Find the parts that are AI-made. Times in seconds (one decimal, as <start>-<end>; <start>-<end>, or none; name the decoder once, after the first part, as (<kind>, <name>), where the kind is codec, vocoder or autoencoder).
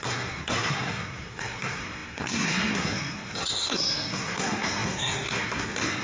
0.0-6.0 (codec, SNAC)